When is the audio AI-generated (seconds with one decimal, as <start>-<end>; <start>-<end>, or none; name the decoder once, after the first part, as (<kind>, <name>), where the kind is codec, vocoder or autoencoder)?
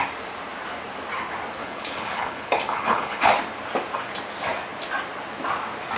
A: 1.6-3.3 (codec, HILCodec)